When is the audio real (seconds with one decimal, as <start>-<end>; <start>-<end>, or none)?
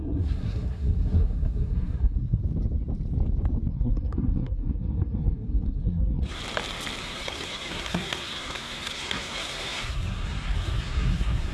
2.4-3.7; 6.4-7.0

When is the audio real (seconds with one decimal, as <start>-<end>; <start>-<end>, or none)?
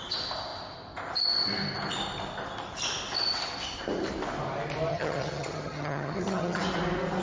0.0-4.9; 6.6-7.2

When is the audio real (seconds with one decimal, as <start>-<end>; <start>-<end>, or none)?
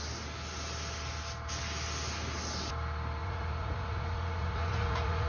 0.0-3.2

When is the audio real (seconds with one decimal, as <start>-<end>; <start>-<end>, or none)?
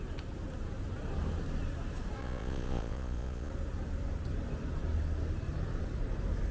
0.0-2.2; 3.5-6.5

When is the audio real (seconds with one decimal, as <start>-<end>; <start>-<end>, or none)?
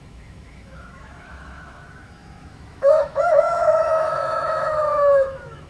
none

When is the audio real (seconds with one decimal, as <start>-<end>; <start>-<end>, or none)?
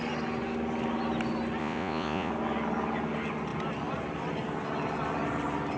0.0-1.6; 2.3-5.8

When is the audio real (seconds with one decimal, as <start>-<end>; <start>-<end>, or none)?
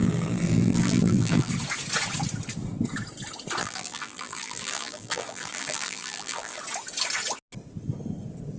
1.5-3.6; 6.6-8.6